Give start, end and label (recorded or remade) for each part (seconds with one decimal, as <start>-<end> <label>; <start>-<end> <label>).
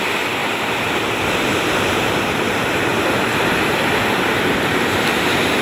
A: 0.0-0.4 remade; 0.4-1.3 recorded; 1.3-2.9 remade; 2.9-5.0 recorded; 5.0-5.6 remade